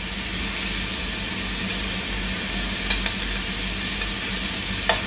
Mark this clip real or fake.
real